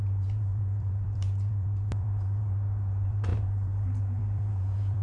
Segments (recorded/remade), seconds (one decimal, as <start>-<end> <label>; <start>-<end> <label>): 0.0-5.0 remade